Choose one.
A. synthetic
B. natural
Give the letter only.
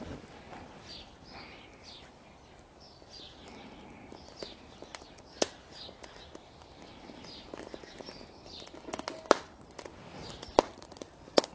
B